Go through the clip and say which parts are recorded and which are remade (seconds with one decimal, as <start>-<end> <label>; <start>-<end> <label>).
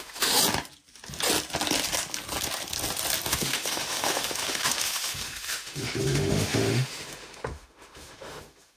0.0-0.4 remade; 0.4-3.3 recorded; 3.3-8.8 remade